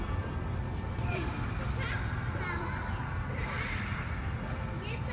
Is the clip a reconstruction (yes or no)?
yes